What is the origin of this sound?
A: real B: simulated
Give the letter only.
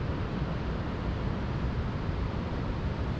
A